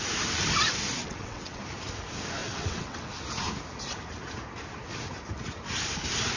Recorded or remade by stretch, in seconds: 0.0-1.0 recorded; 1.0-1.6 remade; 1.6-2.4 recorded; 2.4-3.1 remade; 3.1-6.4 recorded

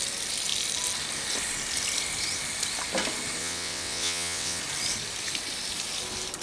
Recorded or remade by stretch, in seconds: 0.0-3.4 recorded; 3.4-4.6 remade; 4.6-6.4 recorded

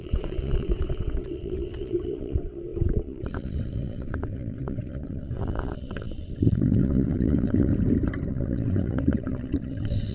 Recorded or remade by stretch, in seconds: 0.0-7.7 remade; 7.7-8.3 recorded; 8.3-10.1 remade

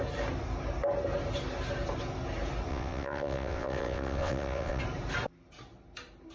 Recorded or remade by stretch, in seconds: 0.0-2.7 recorded; 2.7-4.8 remade; 4.8-6.3 recorded